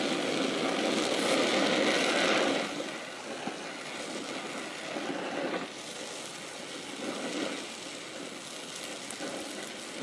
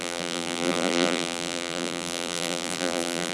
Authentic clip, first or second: first